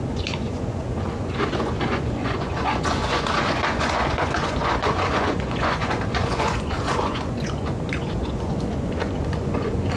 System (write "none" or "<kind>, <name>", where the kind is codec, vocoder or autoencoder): vocoder, Vocos